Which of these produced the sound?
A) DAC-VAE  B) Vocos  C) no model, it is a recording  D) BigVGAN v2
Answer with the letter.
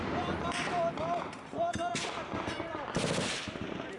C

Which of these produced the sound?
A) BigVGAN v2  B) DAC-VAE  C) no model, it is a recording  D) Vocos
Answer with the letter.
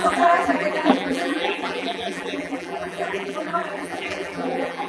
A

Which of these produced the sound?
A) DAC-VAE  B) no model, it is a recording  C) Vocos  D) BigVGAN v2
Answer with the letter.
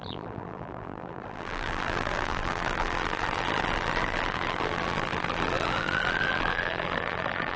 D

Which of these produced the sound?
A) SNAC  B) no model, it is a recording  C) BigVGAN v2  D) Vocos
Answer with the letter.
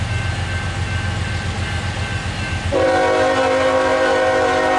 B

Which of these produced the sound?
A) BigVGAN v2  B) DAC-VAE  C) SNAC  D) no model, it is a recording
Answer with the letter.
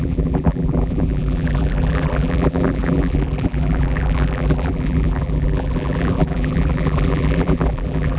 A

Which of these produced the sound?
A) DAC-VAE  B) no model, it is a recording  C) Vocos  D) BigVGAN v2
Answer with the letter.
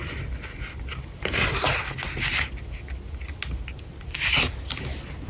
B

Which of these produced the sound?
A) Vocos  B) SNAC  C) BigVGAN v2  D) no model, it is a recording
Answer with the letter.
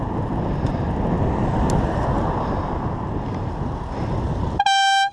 D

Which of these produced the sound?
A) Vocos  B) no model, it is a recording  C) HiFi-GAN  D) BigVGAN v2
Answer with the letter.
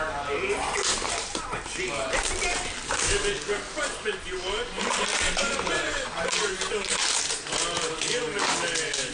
B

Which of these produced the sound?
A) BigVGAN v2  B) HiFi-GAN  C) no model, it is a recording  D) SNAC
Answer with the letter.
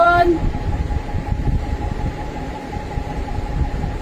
A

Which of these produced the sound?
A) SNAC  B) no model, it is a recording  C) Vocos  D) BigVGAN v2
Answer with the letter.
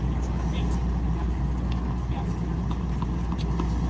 B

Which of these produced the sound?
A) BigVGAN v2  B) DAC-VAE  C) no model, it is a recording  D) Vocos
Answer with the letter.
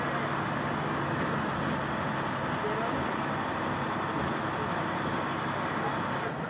C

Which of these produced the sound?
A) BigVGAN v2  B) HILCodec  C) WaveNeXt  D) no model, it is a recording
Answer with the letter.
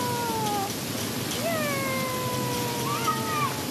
D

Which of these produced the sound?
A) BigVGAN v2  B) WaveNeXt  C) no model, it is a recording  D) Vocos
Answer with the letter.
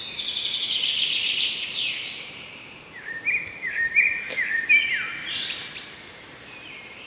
A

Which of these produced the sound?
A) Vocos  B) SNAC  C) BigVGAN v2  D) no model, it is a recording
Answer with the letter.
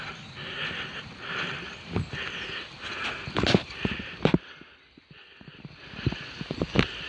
D